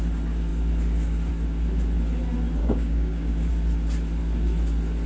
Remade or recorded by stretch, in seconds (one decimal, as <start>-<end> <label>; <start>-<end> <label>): 0.0-2.6 recorded; 2.6-3.5 remade; 3.5-5.1 recorded